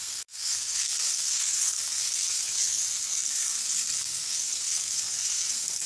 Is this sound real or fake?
fake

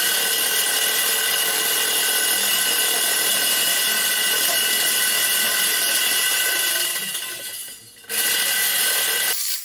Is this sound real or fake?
real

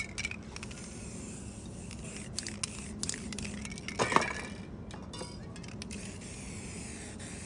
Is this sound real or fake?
real